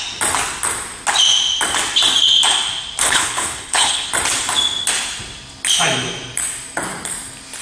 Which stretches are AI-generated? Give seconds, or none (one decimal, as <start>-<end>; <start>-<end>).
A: 3.0-4.1